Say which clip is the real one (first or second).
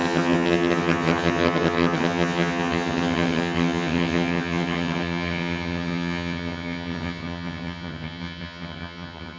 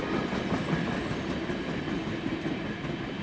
second